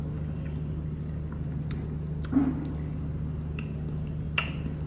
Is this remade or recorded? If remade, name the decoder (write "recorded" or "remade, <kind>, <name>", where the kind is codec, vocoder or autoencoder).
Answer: recorded